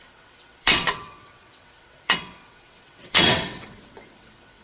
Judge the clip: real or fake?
fake